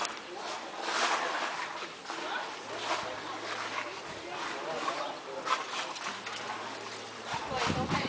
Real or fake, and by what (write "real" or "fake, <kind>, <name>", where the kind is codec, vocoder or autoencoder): real